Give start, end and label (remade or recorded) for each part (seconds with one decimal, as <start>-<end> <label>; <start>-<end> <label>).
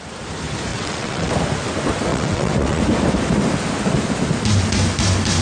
0.0-0.7 recorded; 0.7-1.3 remade; 1.3-2.1 recorded; 2.1-2.8 remade; 2.8-5.4 recorded